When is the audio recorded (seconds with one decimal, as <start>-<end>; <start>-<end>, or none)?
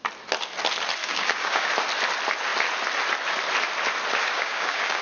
0.0-1.0; 1.7-4.2